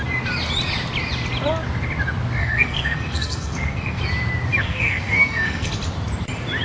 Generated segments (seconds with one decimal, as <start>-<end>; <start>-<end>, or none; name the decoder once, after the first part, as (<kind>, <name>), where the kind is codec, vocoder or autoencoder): 2.4-4.0 (codec, SNAC); 4.5-5.7